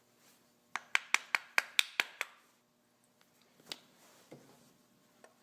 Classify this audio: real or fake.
real